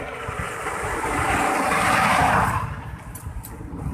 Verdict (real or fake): fake